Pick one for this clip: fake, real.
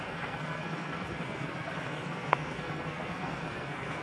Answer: fake